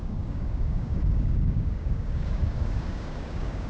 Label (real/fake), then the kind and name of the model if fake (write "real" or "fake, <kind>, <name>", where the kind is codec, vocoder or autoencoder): fake, codec, DAC